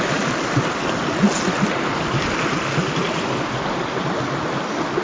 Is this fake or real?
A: real